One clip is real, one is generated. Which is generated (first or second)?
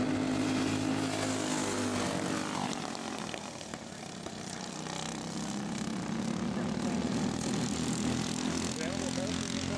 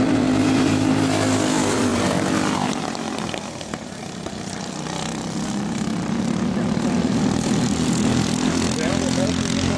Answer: second